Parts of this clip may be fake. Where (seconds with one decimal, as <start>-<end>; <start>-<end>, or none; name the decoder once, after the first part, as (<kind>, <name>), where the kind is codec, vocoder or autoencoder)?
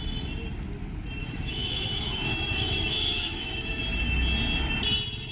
1.2-3.8 (autoencoder, DAC-VAE)